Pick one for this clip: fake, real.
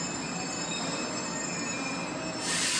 real